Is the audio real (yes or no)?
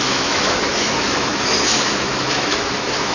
no